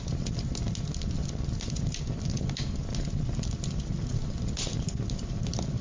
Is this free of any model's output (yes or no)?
yes